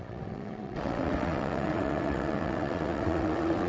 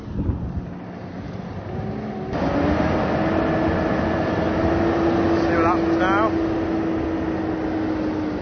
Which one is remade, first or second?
first